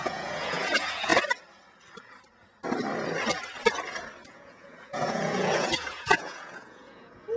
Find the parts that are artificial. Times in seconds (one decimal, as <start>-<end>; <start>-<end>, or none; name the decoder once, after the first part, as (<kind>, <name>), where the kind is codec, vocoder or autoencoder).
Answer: 0.0-1.1 (vocoder, Vocos); 4.3-7.4